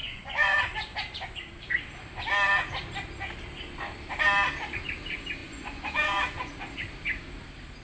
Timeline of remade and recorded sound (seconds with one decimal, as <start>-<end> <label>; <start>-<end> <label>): 0.0-0.6 remade; 0.6-5.4 recorded; 5.4-6.5 remade; 6.5-7.8 recorded